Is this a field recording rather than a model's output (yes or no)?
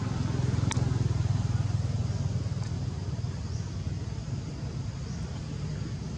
yes